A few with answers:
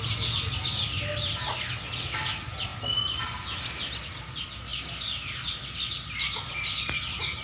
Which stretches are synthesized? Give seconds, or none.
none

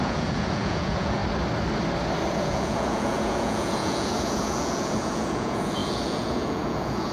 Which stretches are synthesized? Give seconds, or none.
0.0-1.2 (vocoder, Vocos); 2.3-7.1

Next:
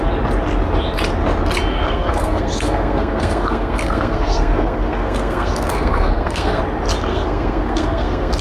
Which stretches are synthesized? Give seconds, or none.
1.7-6.6 (codec, SNAC); 7.1-8.4

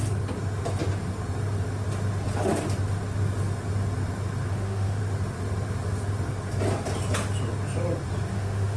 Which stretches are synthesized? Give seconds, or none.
4.5-5.0 (autoencoder, DAC-VAE); 8.3-8.8

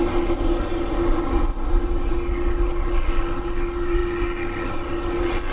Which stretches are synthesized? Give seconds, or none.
none

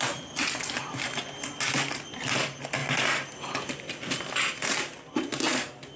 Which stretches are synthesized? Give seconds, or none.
none

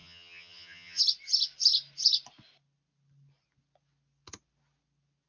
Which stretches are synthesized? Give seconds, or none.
0.0-1.0 (vocoder, HiFi-GAN)

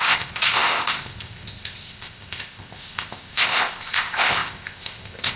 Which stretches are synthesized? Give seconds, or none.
0.0-5.4 (codec, ZipCodec)